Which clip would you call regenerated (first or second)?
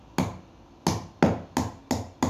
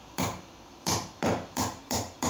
second